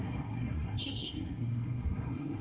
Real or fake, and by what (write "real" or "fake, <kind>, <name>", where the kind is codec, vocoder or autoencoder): fake, codec, SNAC